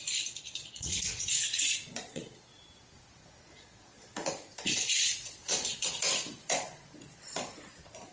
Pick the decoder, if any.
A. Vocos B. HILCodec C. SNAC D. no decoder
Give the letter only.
A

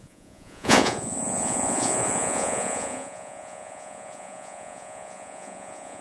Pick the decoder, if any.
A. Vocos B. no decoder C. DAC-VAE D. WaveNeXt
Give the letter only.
A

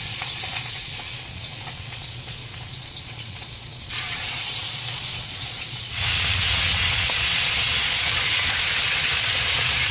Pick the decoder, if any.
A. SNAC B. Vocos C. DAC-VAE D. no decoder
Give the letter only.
B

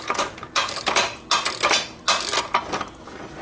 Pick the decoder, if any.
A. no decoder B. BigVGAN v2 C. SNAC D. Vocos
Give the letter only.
A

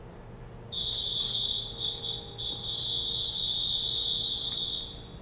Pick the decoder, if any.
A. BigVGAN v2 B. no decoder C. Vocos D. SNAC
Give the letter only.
B